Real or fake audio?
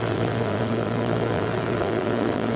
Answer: fake